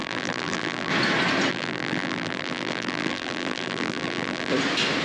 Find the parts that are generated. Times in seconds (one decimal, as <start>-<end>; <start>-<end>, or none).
0.0-0.9; 1.5-4.5